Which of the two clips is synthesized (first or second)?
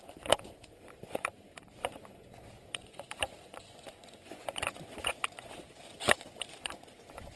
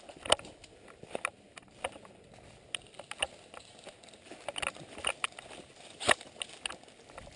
first